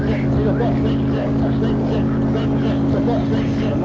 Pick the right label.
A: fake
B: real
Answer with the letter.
B